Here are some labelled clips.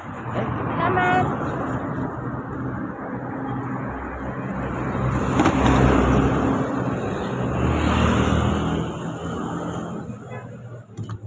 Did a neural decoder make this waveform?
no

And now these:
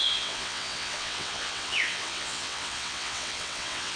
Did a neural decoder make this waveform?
yes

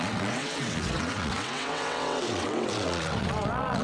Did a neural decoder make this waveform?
yes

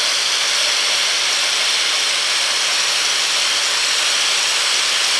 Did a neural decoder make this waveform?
no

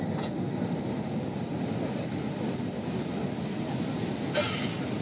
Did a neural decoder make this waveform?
no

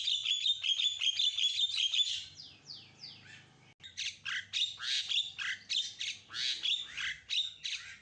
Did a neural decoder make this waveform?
no